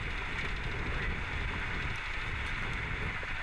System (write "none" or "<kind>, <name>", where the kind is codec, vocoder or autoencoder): none